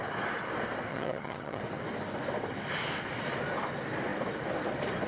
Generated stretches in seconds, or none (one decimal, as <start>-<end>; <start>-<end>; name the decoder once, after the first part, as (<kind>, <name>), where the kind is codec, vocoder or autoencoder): 0.9-1.6 (vocoder, HiFi-GAN)